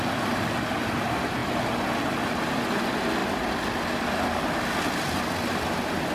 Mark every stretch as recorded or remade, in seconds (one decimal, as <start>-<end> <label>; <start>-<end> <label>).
0.0-6.1 recorded